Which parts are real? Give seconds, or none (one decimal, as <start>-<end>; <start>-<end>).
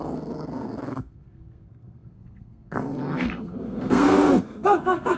none